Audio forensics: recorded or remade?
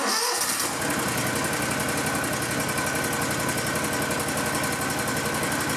recorded